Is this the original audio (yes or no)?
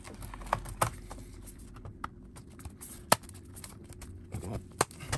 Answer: yes